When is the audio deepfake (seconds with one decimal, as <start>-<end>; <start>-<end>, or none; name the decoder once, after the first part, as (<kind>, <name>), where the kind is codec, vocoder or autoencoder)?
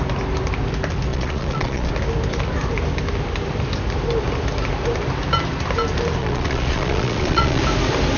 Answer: 1.1-1.9 (vocoder, Vocos); 6.2-7.6